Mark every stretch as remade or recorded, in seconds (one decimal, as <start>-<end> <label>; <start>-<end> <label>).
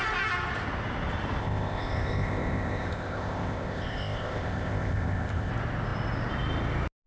0.0-1.4 recorded; 1.4-5.5 remade; 5.5-7.1 recorded